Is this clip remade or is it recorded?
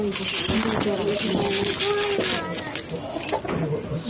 recorded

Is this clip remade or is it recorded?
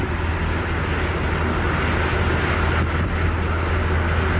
recorded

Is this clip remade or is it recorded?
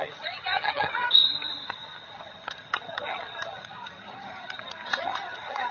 remade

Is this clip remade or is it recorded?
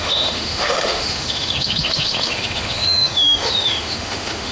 remade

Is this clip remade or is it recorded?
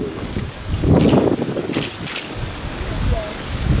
remade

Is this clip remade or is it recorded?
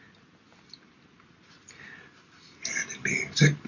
recorded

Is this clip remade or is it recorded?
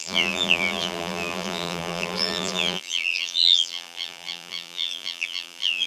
remade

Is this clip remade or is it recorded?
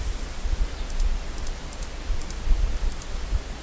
recorded